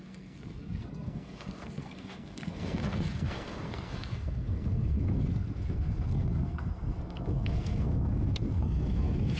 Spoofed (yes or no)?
yes